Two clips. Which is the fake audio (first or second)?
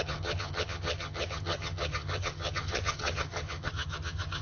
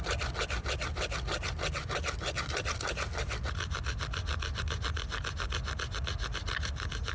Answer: first